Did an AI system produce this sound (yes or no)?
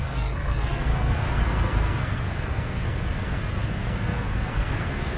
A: yes